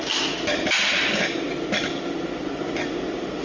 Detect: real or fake real